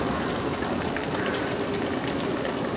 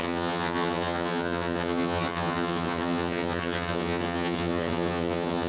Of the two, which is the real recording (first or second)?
first